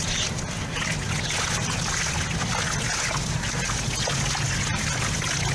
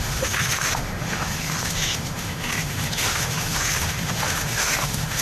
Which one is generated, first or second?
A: second